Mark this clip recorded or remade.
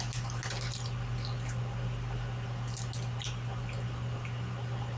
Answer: recorded